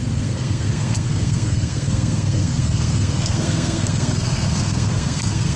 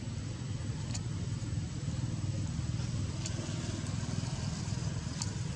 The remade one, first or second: first